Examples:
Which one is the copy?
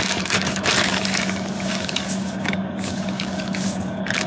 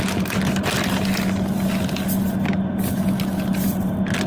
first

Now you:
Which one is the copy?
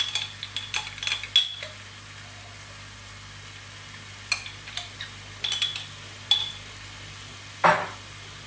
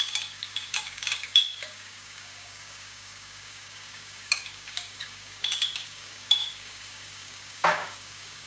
second